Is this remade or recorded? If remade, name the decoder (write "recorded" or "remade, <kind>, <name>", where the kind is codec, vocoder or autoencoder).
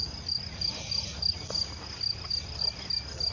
recorded